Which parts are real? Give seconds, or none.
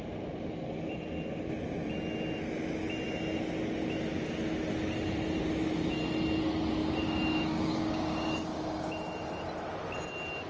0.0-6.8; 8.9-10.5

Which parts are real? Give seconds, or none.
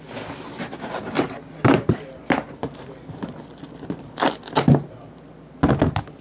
0.0-6.2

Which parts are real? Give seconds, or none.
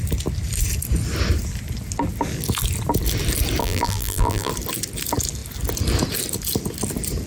0.0-3.6; 4.5-7.3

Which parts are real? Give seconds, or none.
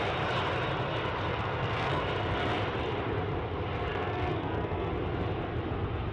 0.0-1.3; 2.0-3.9; 4.9-6.1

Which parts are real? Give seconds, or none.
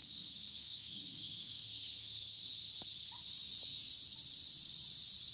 2.5-5.3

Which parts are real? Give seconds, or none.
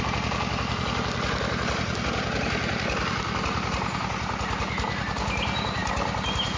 0.0-6.6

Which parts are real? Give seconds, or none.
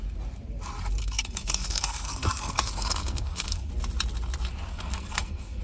0.0-1.0; 3.7-4.7